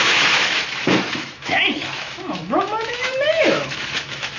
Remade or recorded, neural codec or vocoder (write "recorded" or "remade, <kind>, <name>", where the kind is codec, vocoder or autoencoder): remade, autoencoder, DAC-VAE